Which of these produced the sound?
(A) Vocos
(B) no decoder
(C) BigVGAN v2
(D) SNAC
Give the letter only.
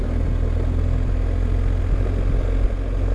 B